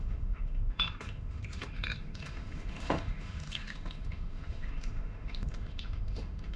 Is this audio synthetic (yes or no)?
yes